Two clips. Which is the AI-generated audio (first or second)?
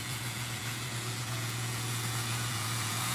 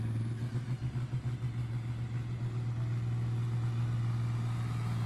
first